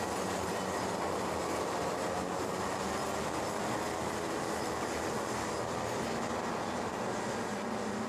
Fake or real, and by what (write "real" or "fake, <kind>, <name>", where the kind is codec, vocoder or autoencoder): real